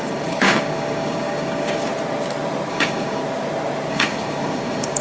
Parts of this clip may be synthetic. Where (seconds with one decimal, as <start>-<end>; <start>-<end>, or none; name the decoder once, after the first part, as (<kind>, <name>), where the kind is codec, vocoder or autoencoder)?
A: 0.0-1.9 (codec, DAC); 2.7-3.2; 3.9-5.0